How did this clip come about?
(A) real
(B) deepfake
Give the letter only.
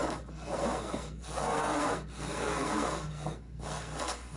B